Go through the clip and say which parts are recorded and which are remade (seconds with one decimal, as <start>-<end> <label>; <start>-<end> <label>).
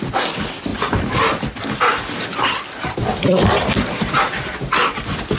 0.0-0.7 recorded; 0.7-1.5 remade; 1.5-3.0 recorded; 3.0-5.4 remade